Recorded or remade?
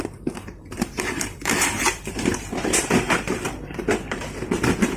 remade